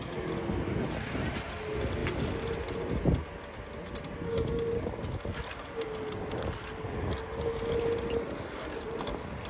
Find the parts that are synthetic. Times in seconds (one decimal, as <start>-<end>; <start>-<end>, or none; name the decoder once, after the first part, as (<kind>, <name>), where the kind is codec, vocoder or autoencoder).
4.3-4.9 (codec, DAC)